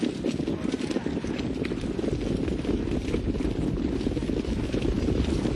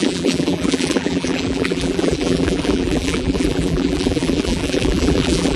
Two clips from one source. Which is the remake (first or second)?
second